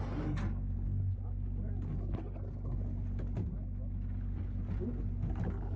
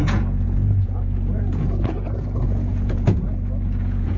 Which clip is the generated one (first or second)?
second